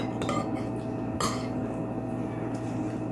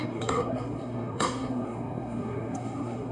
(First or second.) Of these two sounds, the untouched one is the first